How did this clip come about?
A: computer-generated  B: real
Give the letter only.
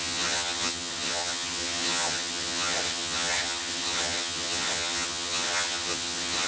A